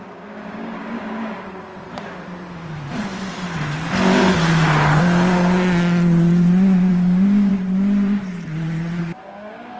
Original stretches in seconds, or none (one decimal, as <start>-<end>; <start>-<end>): 1.7-6.9; 7.5-9.0